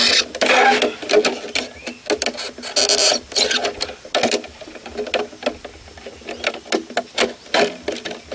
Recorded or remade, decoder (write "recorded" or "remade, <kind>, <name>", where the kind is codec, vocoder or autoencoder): recorded